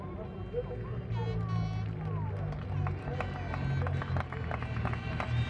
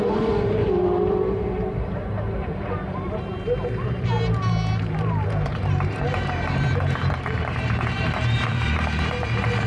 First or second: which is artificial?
second